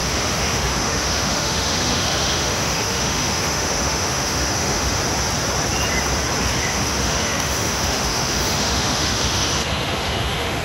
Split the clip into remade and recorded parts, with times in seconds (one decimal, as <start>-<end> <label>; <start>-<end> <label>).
0.0-5.0 remade; 5.0-6.4 recorded; 6.4-10.6 remade